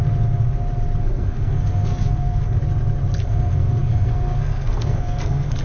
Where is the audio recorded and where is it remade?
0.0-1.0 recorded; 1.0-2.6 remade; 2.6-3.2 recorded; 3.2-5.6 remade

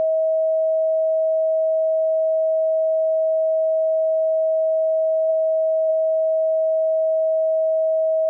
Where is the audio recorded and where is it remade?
0.0-8.3 recorded